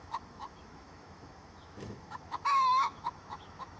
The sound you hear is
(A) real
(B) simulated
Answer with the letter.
B